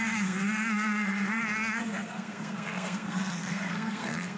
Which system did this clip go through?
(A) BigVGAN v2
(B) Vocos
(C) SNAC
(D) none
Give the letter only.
C